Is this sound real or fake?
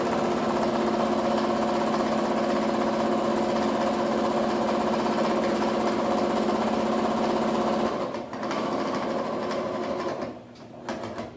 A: real